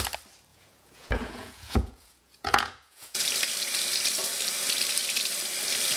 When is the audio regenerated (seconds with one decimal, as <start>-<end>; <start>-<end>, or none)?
0.5-3.2